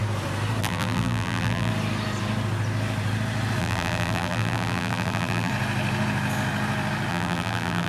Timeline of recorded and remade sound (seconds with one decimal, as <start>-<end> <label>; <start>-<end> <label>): 0.0-0.6 recorded; 0.6-1.7 remade; 1.7-3.6 recorded; 3.6-5.5 remade; 5.5-7.1 recorded; 7.1-7.9 remade